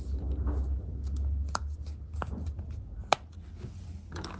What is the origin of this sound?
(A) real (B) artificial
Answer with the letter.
A